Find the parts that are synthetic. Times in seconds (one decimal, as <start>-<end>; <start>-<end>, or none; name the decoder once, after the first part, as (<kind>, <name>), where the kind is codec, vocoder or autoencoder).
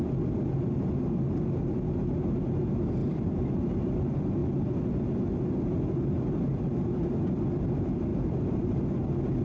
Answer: 3.0-3.7 (vocoder, BigVGAN v2); 8.1-8.8